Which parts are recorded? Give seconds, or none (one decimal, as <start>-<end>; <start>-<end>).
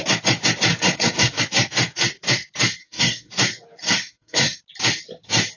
0.0-0.7; 1.4-2.8; 3.3-3.8; 4.6-5.6